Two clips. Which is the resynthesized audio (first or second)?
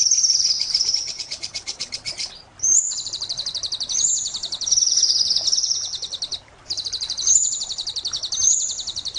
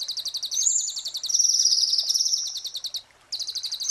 first